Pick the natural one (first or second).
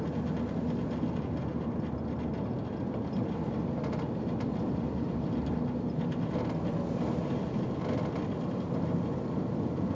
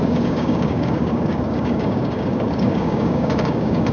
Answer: first